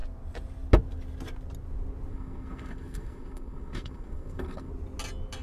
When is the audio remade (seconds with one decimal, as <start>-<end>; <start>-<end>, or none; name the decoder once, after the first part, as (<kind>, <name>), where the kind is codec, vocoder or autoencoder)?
2.1-4.7 (codec, SNAC)